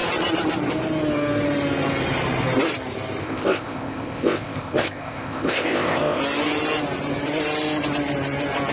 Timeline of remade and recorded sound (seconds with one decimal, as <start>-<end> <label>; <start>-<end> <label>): 0.0-3.2 recorded; 3.2-6.2 remade; 6.2-8.7 recorded